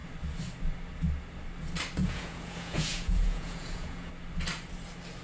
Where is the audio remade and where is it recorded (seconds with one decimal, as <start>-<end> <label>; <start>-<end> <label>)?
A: 0.0-2.0 recorded; 2.0-4.1 remade; 4.1-5.2 recorded